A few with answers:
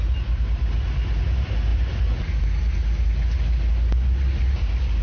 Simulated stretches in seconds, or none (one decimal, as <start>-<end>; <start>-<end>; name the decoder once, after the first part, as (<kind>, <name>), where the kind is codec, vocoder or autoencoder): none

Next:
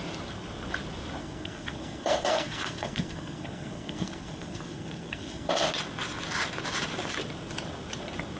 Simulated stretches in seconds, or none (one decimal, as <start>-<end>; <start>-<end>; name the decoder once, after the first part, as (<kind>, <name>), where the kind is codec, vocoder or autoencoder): 1.2-5.5 (codec, SNAC)

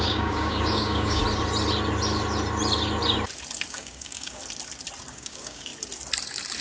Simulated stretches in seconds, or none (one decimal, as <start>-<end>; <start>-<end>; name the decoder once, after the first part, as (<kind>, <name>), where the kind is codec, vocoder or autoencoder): 0.0-1.2 (codec, DAC); 3.7-4.4; 5.1-5.7

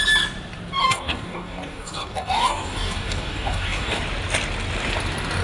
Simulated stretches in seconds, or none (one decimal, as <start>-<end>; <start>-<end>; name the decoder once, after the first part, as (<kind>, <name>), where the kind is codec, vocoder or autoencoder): 0.8-4.0 (codec, DAC)